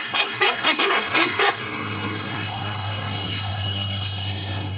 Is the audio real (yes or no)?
no